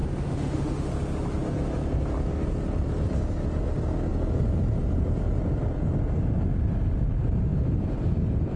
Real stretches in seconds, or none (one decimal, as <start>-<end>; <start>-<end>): 0.9-8.6